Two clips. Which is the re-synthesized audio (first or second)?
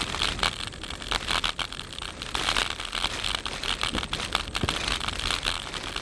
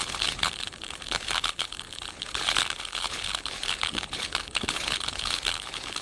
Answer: second